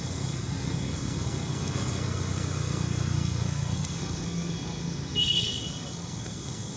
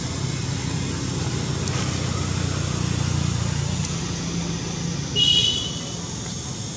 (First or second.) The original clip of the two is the second